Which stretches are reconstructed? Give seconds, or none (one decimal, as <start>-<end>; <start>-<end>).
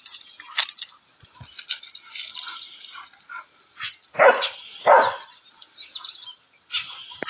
none